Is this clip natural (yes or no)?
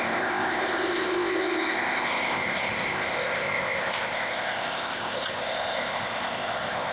no